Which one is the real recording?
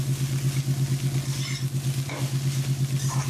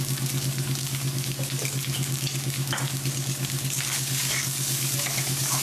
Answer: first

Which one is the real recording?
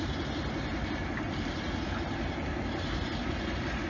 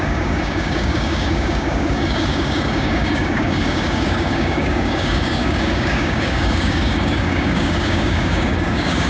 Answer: first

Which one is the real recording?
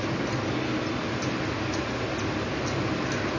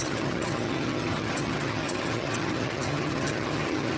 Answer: first